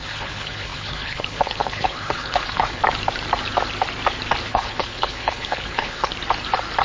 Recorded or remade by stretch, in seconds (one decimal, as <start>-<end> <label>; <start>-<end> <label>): 0.0-2.8 remade; 2.8-4.5 recorded; 4.5-6.1 remade; 6.1-6.8 recorded